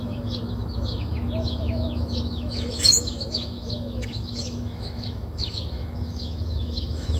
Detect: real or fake fake